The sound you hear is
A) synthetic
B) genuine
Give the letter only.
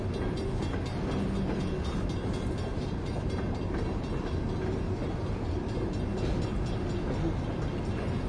B